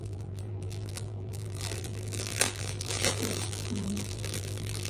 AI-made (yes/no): yes